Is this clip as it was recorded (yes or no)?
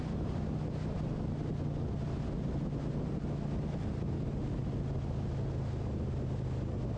yes